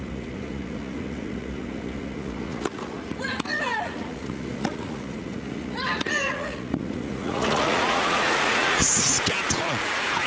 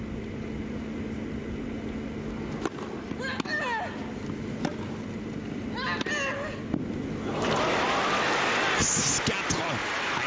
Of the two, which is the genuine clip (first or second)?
second